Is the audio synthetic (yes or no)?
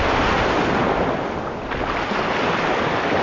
no